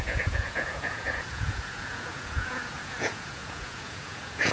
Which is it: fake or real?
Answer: fake